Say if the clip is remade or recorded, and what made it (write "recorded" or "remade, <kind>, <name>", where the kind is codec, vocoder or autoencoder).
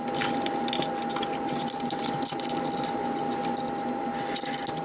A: recorded